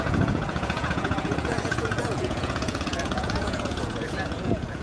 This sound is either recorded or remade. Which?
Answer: remade